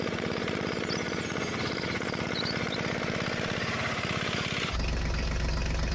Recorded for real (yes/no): yes